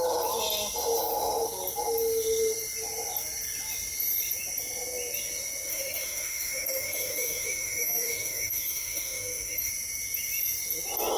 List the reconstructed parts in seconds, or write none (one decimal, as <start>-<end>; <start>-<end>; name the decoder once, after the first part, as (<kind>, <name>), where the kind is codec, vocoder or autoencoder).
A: 5.7-9.7 (autoencoder, DAC-VAE)